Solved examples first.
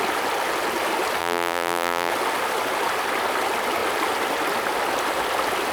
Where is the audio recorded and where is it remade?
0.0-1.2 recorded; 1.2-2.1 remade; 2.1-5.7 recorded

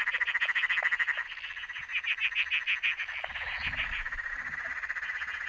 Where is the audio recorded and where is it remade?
0.0-5.5 recorded

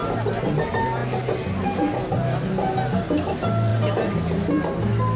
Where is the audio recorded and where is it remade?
0.0-5.2 recorded